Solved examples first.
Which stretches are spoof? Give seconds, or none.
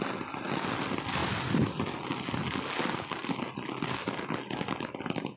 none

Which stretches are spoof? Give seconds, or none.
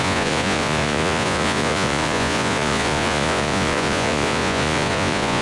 0.0-5.4 (vocoder, Vocos)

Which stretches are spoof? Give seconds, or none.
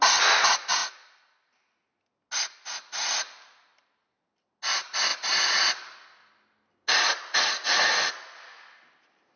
none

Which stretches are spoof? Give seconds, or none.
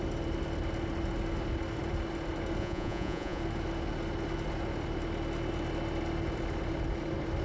2.6-3.4 (vocoder, Vocos)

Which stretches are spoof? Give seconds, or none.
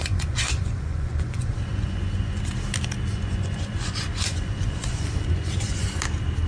0.0-2.4 (vocoder, Vocos); 3.1-6.0